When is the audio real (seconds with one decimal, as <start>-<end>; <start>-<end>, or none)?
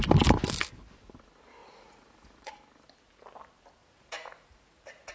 0.0-1.6; 2.5-3.8